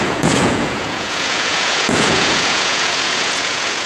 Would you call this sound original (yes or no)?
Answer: no